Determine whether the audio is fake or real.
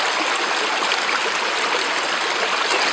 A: real